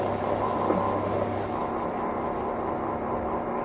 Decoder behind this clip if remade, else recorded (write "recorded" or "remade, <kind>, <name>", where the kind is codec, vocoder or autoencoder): recorded